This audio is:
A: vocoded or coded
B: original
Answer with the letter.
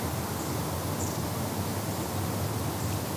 B